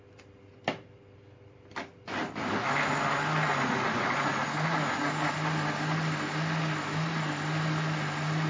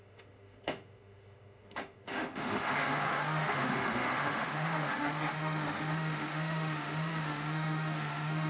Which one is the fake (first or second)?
second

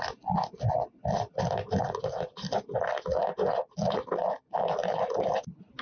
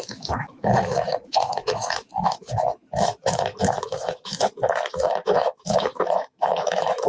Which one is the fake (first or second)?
second